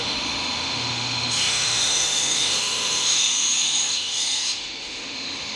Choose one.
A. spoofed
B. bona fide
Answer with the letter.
A